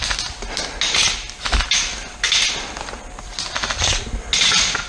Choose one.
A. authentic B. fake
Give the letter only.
A